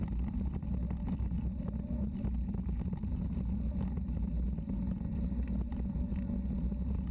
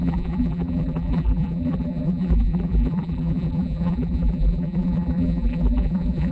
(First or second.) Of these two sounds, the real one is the first